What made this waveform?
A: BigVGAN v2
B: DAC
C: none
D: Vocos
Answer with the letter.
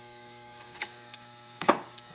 B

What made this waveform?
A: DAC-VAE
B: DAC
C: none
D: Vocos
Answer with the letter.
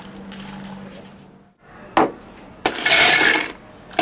C